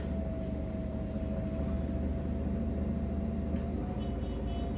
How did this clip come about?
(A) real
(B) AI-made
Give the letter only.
A